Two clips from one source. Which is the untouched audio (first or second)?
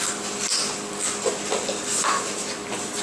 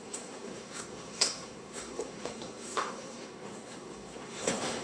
first